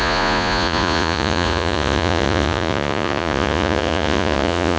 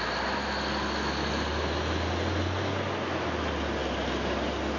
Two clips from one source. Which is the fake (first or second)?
first